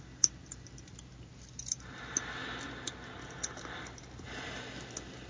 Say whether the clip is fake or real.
real